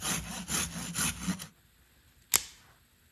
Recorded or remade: recorded